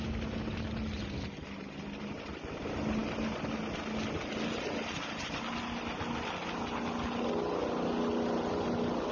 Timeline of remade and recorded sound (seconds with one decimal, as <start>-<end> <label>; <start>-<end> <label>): 0.0-9.1 recorded